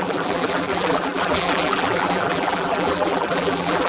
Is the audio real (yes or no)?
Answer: no